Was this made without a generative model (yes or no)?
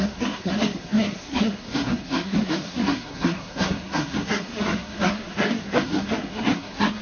no